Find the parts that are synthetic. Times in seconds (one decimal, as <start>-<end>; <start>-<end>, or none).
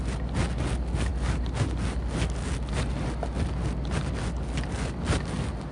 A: none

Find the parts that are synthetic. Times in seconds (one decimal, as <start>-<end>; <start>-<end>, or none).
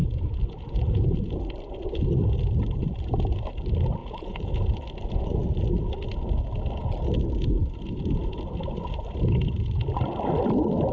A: 0.0-1.4; 4.0-4.5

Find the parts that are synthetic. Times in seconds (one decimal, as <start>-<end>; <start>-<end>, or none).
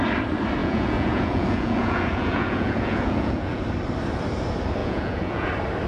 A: 0.6-3.6; 4.8-5.5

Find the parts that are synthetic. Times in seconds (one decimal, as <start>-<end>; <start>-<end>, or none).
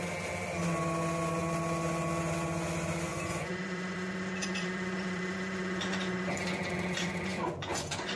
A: 3.1-8.2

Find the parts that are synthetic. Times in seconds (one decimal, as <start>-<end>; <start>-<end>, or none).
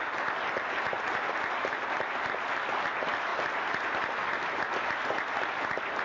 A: none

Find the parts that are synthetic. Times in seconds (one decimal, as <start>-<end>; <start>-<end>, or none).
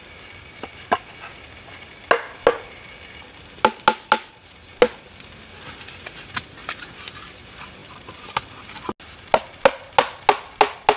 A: none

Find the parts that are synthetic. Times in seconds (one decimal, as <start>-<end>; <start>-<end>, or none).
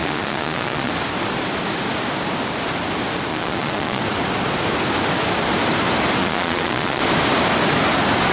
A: 0.0-0.9; 3.3-4.0; 6.2-7.0